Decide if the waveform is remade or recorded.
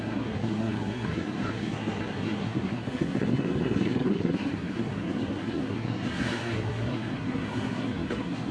remade